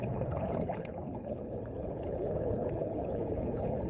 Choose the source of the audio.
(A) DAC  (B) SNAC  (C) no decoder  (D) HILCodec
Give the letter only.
D